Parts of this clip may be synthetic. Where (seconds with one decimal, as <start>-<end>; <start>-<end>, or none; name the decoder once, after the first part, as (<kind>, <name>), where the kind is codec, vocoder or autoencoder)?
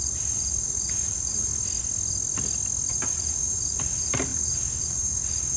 0.0-1.5 (vocoder, BigVGAN v2); 2.9-5.6